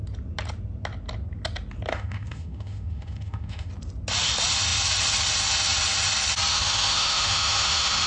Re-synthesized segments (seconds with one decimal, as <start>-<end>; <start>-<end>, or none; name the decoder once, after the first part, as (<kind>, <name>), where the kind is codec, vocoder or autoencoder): 1.9-3.7 (autoencoder, DAC-VAE); 6.5-8.1